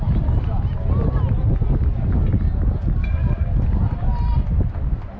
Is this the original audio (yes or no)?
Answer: yes